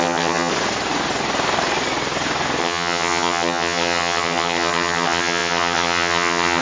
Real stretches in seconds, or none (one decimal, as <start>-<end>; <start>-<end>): 0.5-2.6